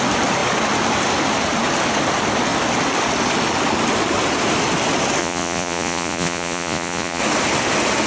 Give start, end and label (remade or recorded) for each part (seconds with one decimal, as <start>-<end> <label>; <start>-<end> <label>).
0.0-5.2 recorded; 5.2-7.2 remade; 7.2-8.1 recorded